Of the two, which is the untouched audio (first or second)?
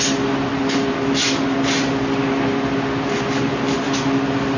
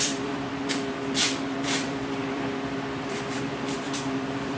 first